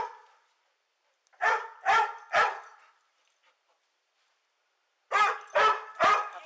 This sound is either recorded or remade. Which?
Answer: recorded